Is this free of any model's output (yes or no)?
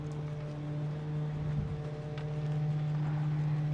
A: yes